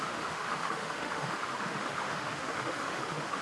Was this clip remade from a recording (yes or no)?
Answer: yes